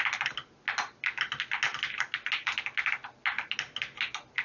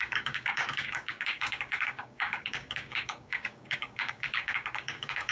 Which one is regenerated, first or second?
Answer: second